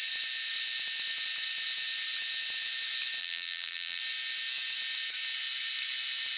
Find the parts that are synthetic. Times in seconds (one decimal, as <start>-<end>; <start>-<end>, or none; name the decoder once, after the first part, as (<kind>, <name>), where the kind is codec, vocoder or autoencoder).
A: 3.2-4.0 (vocoder, BigVGAN v2)